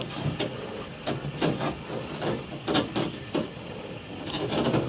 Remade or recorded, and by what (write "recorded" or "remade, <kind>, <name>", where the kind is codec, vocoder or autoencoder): recorded